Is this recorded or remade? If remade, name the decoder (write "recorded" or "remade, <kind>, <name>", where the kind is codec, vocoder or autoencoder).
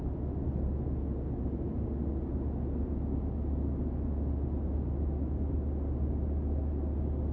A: recorded